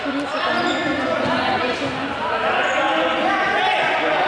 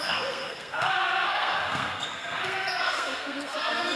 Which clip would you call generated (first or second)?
second